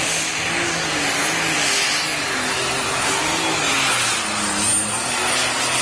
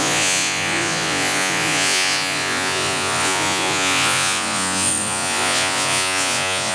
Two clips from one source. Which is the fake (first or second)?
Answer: second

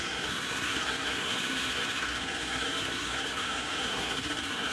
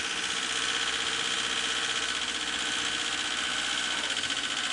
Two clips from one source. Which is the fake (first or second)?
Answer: first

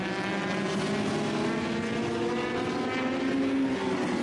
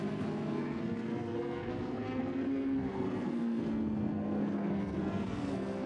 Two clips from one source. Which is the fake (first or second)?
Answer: second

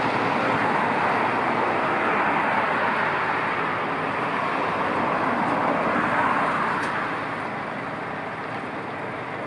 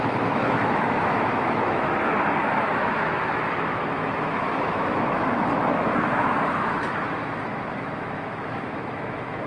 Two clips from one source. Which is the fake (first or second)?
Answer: second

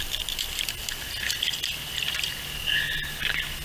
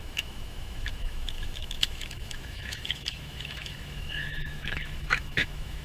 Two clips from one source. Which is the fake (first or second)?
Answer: second